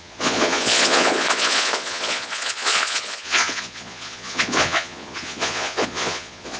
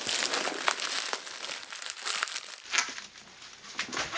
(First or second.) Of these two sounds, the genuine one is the second